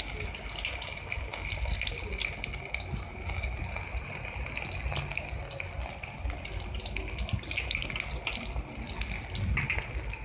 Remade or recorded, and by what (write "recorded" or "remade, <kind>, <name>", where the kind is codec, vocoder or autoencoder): recorded